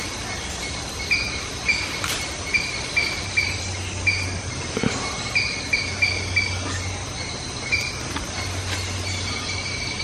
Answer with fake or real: real